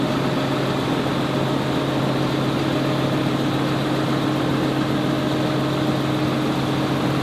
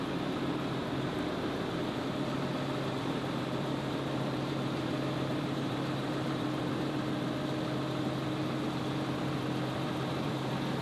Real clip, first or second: first